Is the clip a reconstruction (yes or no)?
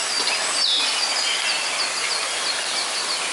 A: no